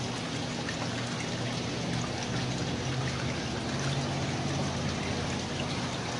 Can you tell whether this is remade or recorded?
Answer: recorded